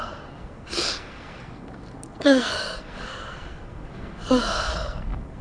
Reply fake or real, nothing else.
fake